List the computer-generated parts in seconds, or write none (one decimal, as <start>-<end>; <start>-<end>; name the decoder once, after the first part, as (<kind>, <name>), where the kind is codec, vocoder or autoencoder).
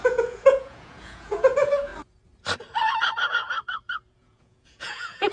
0.0-1.9 (vocoder, Vocos); 4.1-5.3